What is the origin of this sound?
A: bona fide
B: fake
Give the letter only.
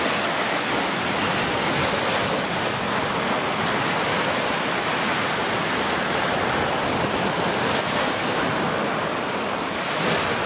A